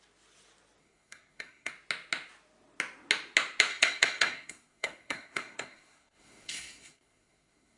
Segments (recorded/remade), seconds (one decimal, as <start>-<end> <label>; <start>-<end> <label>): 0.0-0.8 recorded; 0.8-1.7 remade; 1.7-3.7 recorded; 3.7-7.8 remade